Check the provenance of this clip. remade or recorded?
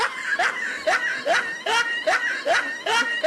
recorded